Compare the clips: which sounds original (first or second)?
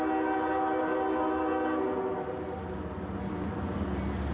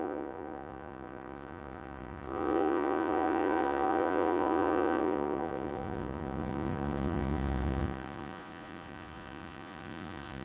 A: first